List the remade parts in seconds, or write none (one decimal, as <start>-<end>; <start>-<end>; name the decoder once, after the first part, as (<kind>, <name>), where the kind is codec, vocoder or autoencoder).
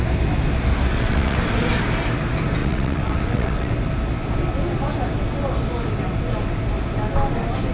0.9-1.4 (vocoder, WaveNeXt); 2.6-3.7